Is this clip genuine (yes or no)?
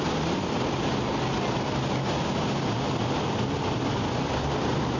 yes